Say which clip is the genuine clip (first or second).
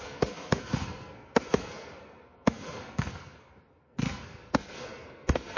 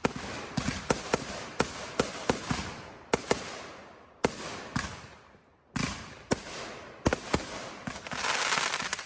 second